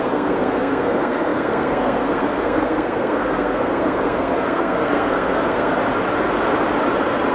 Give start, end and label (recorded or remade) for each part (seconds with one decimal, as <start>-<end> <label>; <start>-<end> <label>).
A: 0.0-5.8 remade; 5.8-7.3 recorded